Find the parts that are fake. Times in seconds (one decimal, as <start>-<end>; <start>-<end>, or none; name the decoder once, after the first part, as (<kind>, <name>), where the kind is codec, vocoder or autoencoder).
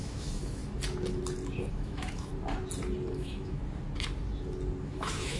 0.0-0.6 (autoencoder, DAC-VAE); 1.7-2.3; 3.1-3.6; 4.8-5.4